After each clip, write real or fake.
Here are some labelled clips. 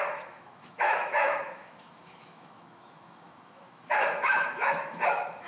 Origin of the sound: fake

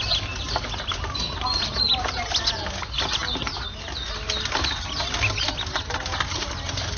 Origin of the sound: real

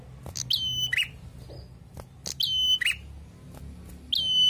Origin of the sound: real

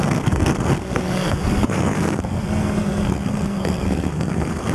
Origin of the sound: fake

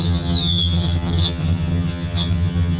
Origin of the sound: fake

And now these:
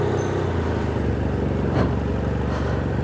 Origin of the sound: real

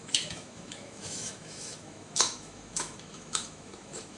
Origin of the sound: fake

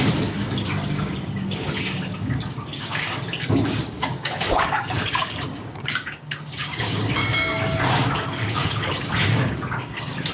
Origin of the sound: fake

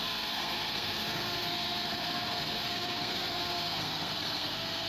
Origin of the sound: fake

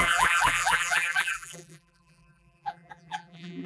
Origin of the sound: fake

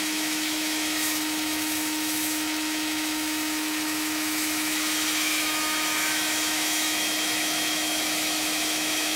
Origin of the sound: fake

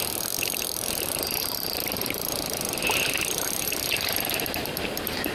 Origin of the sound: real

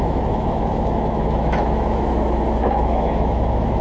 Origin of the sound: fake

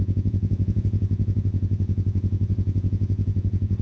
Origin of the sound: fake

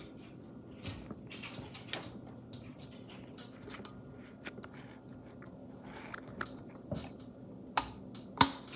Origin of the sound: real